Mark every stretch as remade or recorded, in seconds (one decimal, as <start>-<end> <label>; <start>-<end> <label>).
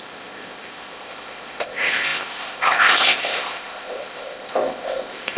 0.0-5.4 remade